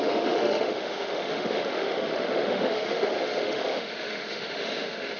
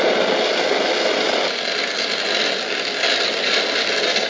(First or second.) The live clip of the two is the second